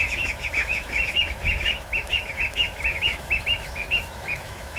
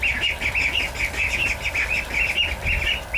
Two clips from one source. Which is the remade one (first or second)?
first